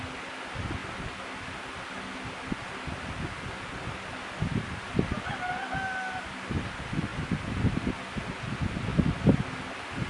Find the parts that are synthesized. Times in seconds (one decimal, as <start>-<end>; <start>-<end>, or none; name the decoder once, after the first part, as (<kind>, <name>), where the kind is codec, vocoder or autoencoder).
none